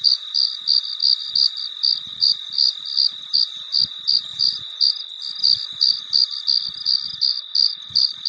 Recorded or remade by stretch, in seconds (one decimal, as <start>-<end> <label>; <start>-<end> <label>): 0.0-8.3 recorded